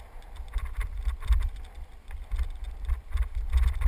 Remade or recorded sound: remade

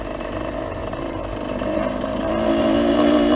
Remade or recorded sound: remade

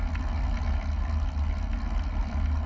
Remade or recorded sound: recorded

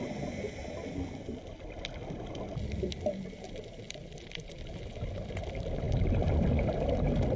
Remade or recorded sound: recorded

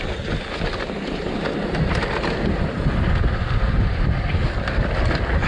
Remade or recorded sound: recorded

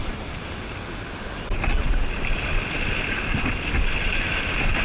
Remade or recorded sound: recorded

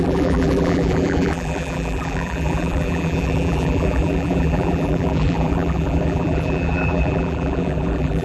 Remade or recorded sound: remade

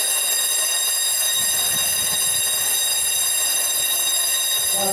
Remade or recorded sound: recorded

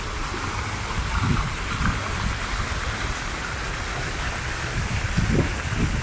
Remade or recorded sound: recorded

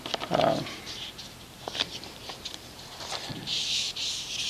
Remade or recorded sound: remade